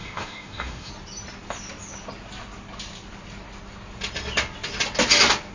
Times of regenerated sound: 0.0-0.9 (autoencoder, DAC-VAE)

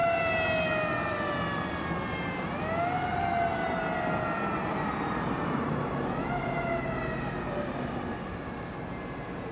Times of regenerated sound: none

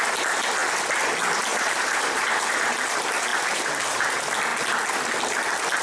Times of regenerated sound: 1.5-2.7 (vocoder, BigVGAN v2); 3.3-4.1

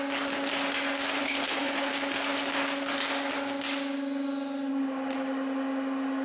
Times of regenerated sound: 1.2-1.9 (codec, HILCodec)

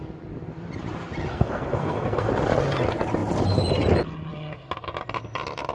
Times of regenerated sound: 1.3-2.3 (codec, SNAC)

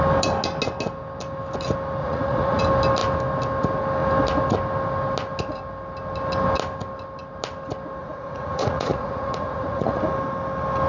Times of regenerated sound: 2.0-2.6 (vocoder, Vocos); 8.0-10.0